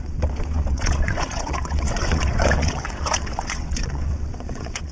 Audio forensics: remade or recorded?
remade